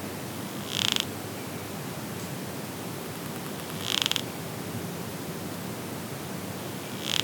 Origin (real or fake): real